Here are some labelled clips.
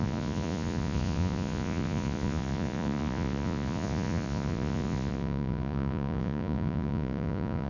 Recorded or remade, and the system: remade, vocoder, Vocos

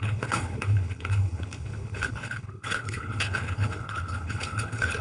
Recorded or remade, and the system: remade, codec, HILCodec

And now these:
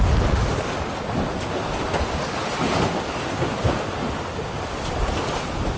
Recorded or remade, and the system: recorded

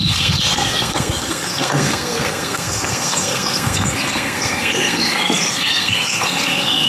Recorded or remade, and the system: remade, codec, SNAC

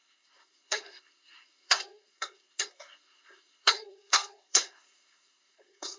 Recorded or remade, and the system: remade, codec, SNAC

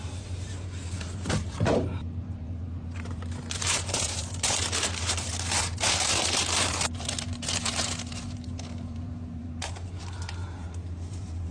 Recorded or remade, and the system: remade, vocoder, BigVGAN v2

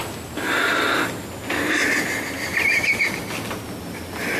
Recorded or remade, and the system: recorded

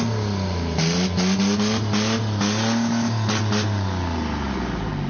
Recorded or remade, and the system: recorded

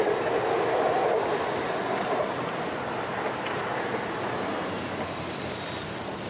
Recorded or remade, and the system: recorded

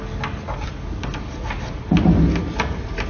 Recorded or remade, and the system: recorded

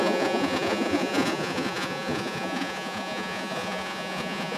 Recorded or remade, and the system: remade, vocoder, Vocos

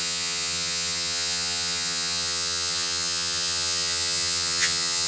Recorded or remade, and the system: remade, vocoder, HiFi-GAN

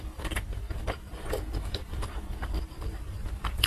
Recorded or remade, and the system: remade, vocoder, BigVGAN v2